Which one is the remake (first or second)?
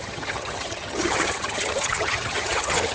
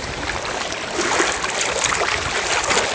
first